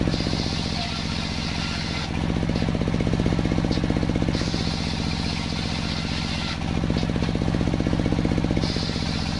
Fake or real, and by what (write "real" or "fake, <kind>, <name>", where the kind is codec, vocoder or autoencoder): real